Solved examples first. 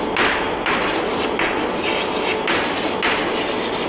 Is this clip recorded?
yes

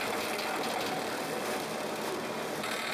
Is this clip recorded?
yes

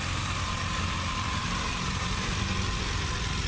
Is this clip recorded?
no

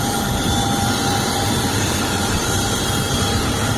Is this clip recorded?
no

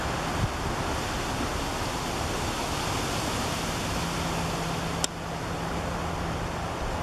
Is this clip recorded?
yes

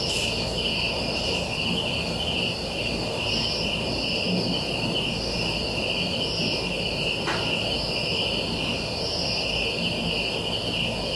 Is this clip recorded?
yes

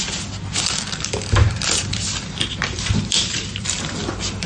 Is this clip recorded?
no